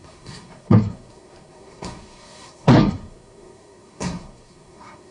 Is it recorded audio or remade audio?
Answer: remade